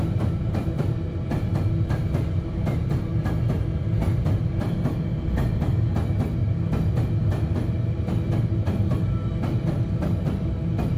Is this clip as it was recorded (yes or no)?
yes